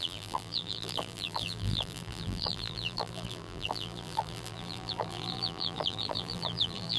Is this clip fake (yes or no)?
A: yes